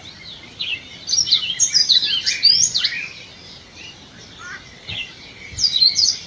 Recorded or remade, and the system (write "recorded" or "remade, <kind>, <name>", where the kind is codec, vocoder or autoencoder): remade, vocoder, BigVGAN v2